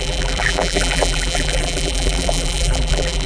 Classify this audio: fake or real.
fake